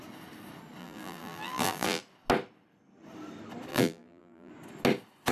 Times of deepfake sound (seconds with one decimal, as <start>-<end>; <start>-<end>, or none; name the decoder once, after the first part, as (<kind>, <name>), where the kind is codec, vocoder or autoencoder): 0.8-2.0 (vocoder, BigVGAN v2); 3.7-4.5